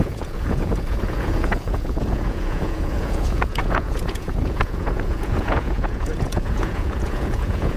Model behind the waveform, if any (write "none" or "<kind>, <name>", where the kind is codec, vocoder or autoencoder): vocoder, Vocos